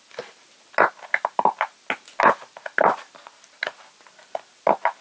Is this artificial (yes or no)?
no